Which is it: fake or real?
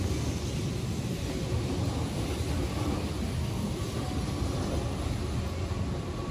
real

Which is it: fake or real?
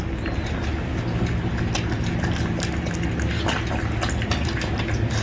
real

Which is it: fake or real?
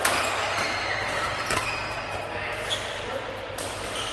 real